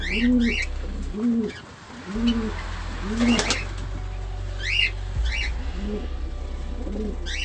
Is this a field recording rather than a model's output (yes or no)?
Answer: yes